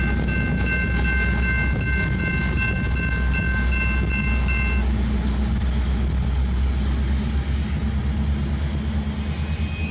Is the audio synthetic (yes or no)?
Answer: no